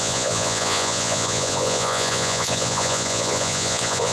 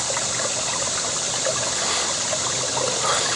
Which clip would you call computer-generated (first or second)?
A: first